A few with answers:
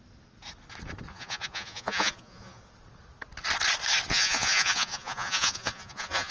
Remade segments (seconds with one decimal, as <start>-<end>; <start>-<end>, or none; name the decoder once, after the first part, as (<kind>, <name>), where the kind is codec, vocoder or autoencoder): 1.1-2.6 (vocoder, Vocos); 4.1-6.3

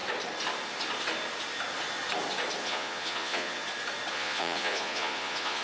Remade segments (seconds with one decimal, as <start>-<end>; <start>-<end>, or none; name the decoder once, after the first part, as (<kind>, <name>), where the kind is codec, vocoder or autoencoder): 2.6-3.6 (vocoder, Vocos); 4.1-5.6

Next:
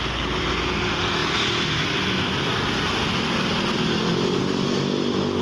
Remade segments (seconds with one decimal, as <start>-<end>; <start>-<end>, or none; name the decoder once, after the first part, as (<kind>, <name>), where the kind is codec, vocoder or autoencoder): none

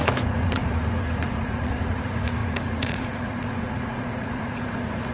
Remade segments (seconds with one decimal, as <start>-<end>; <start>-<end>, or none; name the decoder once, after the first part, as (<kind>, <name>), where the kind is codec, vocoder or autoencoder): 0.0-5.1 (vocoder, Vocos)

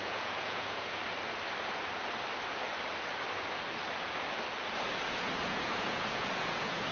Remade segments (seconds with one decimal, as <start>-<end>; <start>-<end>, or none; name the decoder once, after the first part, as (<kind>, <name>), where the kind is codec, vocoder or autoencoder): 0.0-1.0 (vocoder, Vocos); 5.1-6.9

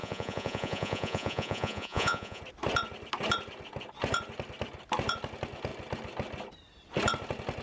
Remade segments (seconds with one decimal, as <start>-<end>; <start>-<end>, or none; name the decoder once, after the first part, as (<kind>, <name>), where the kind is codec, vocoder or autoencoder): 0.0-2.4 (vocoder, Vocos)

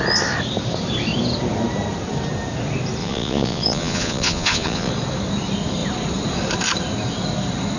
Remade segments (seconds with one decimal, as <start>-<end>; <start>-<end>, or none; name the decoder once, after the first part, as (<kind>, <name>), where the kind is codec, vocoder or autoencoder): 3.0-4.9 (vocoder, Vocos)

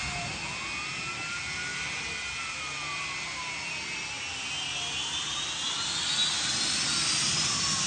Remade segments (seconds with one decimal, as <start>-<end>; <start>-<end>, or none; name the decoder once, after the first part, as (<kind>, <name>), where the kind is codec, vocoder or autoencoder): none